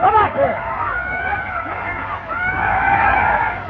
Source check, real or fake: fake